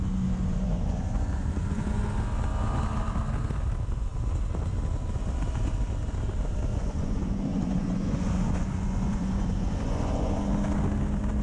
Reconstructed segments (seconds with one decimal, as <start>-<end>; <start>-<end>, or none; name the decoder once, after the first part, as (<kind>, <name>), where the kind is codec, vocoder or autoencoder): 0.5-2.0 (vocoder, Vocos); 6.7-10.4